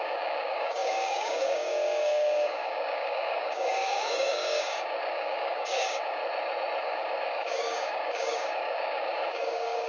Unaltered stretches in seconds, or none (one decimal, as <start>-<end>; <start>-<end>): 6.2-6.8